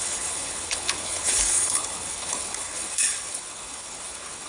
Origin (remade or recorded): remade